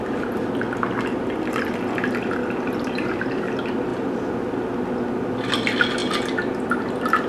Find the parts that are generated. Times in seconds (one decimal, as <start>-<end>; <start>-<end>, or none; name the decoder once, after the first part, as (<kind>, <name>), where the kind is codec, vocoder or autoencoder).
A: none